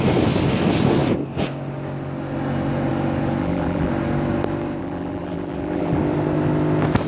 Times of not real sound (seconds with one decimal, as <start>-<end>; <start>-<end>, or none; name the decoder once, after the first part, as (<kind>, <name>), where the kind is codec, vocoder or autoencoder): 3.4-3.9 (vocoder, BigVGAN v2); 4.8-6.0

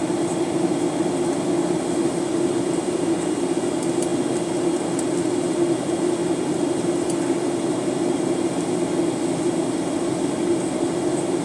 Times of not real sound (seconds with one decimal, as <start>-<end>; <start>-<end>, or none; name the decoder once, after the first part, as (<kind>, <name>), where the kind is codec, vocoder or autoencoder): none

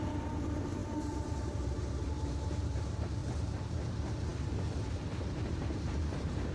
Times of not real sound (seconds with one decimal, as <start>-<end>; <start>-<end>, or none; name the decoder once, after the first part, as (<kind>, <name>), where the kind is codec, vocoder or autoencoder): 0.0-6.5 (vocoder, BigVGAN v2)

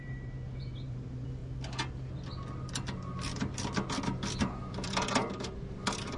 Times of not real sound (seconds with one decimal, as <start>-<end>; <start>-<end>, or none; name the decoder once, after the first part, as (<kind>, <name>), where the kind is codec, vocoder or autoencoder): 0.0-1.4 (vocoder, BigVGAN v2); 4.7-6.2

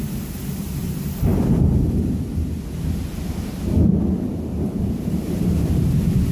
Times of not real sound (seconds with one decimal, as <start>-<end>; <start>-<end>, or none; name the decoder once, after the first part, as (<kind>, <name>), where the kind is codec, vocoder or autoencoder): 0.0-1.3 (vocoder, BigVGAN v2); 4.6-6.3

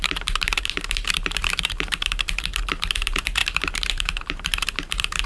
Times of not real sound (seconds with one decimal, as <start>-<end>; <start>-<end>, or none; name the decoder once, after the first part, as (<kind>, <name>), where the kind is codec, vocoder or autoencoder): 0.0-5.3 (vocoder, BigVGAN v2)

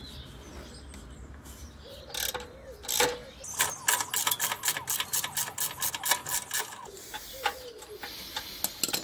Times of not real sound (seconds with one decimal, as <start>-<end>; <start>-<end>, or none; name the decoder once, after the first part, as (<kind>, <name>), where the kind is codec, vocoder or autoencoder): none

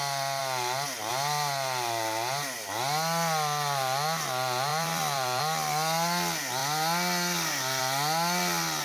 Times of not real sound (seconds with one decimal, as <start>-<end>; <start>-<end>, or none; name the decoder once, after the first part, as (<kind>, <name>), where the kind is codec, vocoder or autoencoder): 4.7-5.4 (vocoder, BigVGAN v2)